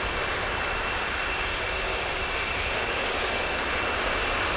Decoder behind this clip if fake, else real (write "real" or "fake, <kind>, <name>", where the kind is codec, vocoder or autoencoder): real